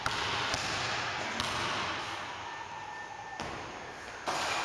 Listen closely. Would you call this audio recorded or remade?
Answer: recorded